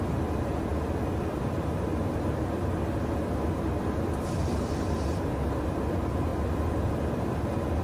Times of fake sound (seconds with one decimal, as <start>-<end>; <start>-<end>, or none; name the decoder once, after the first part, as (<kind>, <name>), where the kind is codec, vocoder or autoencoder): none